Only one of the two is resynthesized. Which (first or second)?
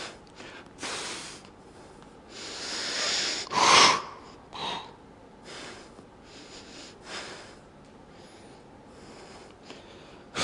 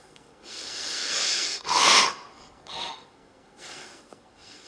second